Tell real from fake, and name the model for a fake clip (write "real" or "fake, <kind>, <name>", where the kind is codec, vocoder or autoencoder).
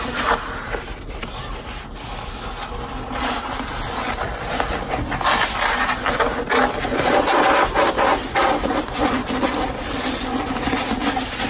real